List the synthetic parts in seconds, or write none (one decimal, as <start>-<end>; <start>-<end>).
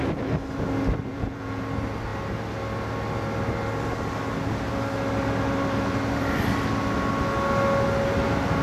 1.1-1.6